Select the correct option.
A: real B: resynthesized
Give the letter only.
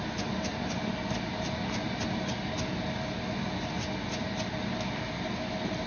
A